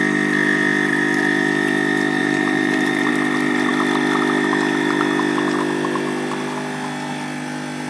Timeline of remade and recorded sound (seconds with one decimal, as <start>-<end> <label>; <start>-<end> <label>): 0.0-2.2 recorded; 2.2-3.1 remade; 3.1-7.9 recorded